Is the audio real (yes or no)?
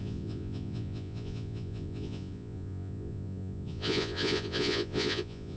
no